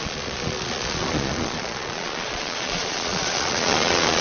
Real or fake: fake